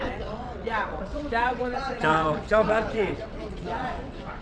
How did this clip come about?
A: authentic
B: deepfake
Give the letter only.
B